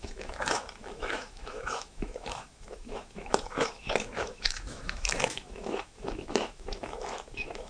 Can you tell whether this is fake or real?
fake